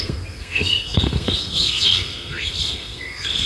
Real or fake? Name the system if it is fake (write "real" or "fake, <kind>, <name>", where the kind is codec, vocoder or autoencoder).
fake, codec, SNAC